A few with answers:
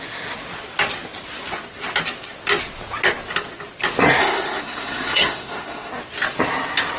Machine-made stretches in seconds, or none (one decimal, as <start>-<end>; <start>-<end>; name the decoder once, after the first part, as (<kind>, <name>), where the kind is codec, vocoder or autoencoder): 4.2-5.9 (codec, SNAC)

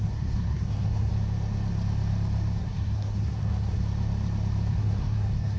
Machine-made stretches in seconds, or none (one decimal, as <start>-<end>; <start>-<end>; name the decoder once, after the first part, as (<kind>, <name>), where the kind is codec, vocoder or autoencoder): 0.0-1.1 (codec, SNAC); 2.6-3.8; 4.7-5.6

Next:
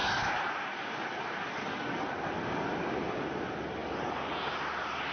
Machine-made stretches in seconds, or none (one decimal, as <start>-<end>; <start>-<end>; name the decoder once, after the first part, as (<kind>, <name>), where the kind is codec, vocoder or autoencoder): none